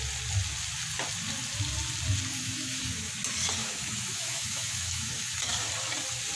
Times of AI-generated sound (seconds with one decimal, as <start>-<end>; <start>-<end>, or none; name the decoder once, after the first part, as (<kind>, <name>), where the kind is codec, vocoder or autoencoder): 2.4-3.1 (autoencoder, DAC-VAE); 3.6-5.5